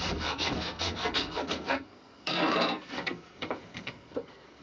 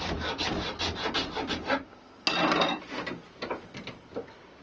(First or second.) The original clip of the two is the second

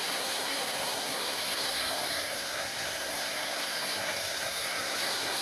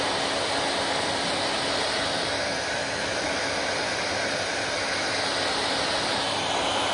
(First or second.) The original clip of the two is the second